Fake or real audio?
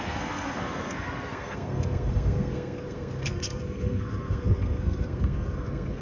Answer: fake